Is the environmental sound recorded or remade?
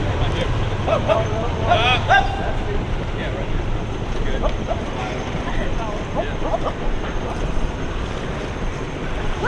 remade